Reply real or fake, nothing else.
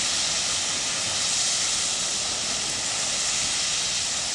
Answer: real